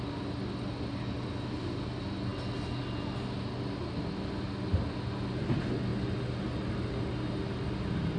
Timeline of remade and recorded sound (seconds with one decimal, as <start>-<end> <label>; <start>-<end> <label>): 0.0-8.2 recorded